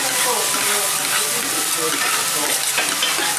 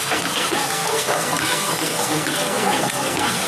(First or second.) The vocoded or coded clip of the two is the second